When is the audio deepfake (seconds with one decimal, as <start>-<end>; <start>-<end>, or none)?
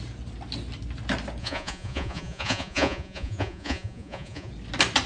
1.4-4.5